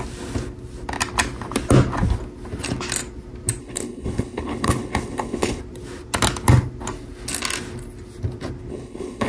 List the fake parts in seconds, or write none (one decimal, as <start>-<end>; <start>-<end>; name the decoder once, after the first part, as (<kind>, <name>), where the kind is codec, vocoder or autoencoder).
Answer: 3.6-5.6 (codec, HILCodec); 8.7-9.3